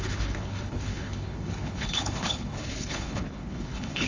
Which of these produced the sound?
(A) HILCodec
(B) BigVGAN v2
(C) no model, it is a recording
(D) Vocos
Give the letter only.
A